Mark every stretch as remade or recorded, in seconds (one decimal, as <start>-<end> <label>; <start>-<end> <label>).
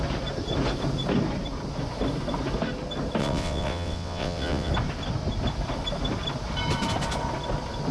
0.0-3.2 recorded; 3.2-4.7 remade; 4.7-7.9 recorded